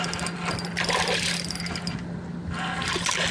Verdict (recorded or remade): recorded